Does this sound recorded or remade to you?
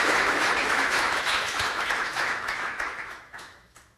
remade